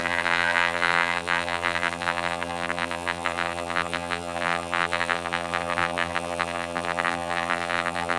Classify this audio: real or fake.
fake